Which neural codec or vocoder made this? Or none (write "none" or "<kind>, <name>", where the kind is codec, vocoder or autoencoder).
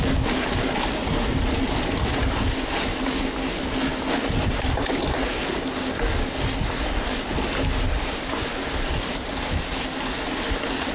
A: none